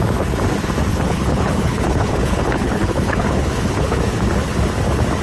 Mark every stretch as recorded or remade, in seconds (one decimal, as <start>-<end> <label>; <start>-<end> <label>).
0.0-0.9 recorded; 0.9-4.0 remade; 4.0-5.2 recorded